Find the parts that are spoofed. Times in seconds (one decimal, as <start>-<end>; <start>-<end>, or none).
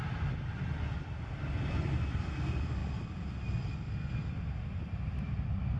none